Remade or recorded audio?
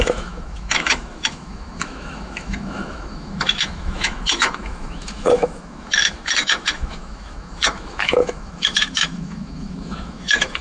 remade